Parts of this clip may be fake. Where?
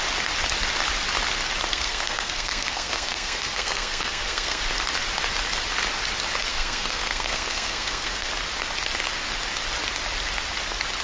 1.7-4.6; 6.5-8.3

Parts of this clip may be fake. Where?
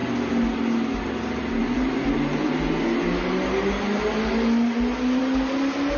none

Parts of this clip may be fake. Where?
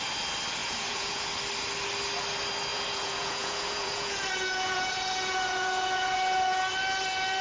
0.6-1.3; 2.7-6.6